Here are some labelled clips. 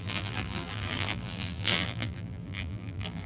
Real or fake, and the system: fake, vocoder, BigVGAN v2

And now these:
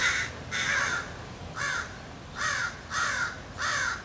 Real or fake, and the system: real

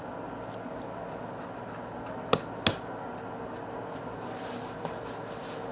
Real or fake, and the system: real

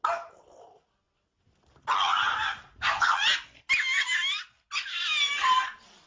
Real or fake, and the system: real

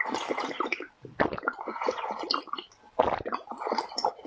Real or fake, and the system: real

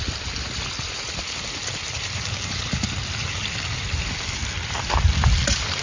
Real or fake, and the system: fake, vocoder, BigVGAN v2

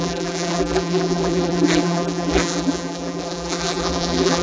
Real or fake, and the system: fake, vocoder, BigVGAN v2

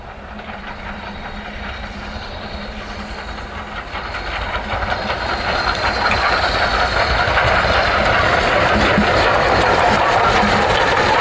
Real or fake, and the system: real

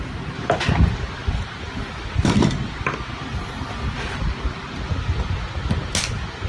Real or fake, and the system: real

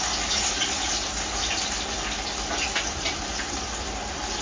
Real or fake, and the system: real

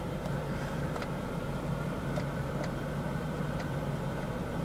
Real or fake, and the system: fake, vocoder, BigVGAN v2